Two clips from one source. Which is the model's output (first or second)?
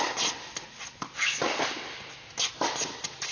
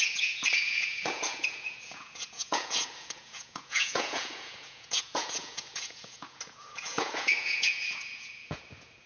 second